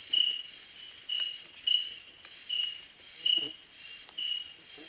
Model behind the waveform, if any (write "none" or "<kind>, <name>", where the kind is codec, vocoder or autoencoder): none